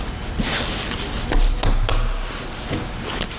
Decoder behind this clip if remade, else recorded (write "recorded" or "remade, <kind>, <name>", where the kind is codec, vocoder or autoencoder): recorded